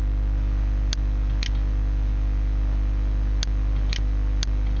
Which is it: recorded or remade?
recorded